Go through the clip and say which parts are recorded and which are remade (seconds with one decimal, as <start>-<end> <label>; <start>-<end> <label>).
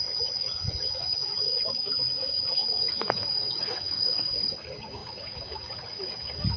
0.0-6.6 remade